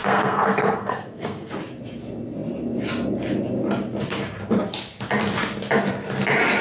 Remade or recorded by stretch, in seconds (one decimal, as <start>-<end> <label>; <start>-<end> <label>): 0.0-1.5 remade; 1.5-6.6 recorded